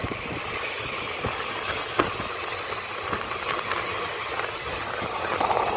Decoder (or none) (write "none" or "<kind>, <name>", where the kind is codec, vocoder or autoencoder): none